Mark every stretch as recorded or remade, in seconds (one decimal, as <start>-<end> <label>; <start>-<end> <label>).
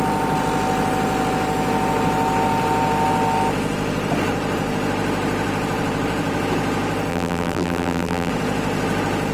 0.0-7.1 recorded; 7.1-8.3 remade; 8.3-9.3 recorded